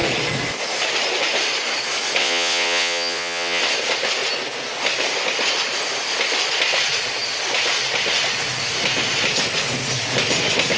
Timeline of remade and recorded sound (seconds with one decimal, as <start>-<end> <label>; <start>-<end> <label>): 0.0-2.2 recorded; 2.2-3.6 remade; 3.6-10.8 recorded